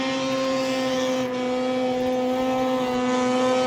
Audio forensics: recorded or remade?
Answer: recorded